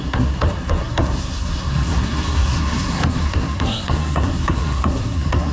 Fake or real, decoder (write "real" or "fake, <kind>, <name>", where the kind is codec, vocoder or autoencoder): fake, codec, SNAC